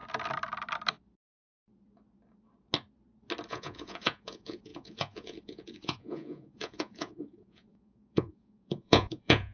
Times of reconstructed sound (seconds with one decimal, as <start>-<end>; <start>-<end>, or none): 3.5-9.5